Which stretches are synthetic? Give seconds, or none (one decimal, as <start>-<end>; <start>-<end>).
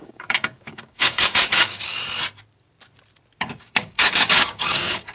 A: 0.0-1.9; 3.4-5.1